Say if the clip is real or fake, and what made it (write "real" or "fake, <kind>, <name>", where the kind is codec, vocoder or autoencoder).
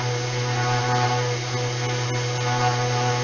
real